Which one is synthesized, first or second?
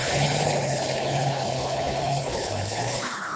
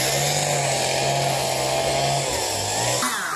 first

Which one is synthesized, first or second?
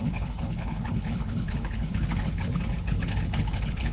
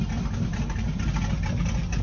first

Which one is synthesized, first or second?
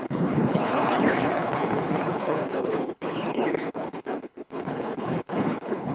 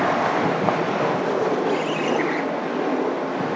first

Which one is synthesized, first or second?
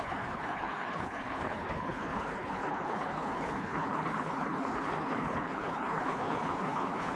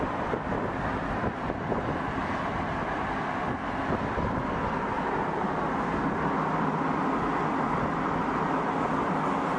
first